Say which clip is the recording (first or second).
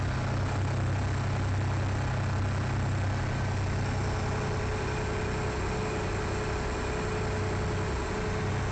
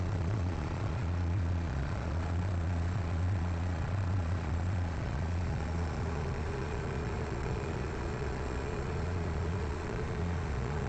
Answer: first